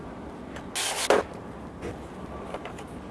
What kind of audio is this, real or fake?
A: real